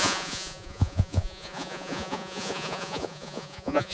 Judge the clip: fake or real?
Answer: fake